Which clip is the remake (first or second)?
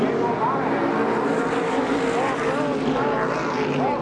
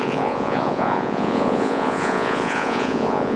second